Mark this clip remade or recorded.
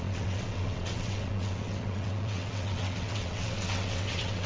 remade